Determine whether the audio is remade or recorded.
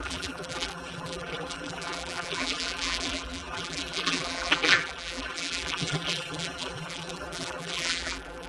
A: remade